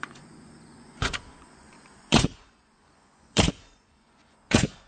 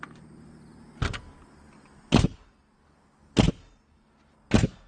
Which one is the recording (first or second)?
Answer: second